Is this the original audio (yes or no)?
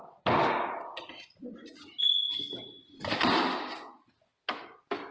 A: yes